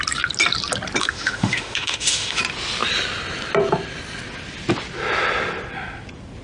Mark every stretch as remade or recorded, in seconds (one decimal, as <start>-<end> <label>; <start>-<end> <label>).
0.0-1.0 recorded; 1.0-2.4 remade; 2.4-6.4 recorded